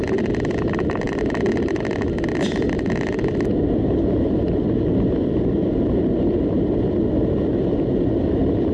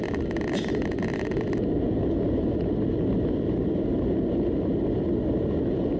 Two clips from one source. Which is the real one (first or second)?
second